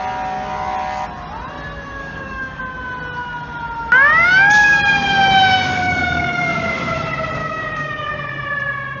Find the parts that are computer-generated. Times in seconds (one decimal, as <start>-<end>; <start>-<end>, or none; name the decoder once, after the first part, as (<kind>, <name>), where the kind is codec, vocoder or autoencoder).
2.0-2.6 (codec, DAC); 5.7-6.6; 7.4-8.1